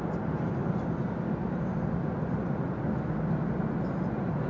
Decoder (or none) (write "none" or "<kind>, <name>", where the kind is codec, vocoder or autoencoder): none